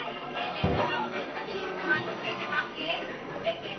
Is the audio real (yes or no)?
no